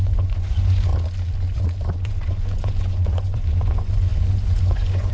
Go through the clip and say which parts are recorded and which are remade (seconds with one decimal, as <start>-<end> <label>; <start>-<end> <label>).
0.0-0.9 remade; 0.9-2.0 recorded; 2.0-5.1 remade